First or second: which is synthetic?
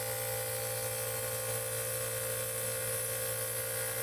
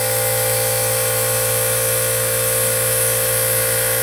second